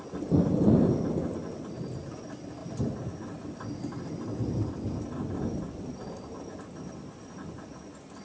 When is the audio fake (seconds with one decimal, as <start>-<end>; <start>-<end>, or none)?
none